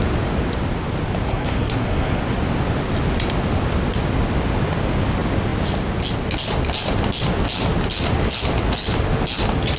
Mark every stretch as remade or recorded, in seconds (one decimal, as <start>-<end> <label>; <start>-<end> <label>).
0.0-1.3 recorded; 1.3-2.2 remade; 2.2-9.8 recorded